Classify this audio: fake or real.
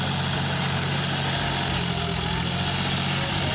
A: real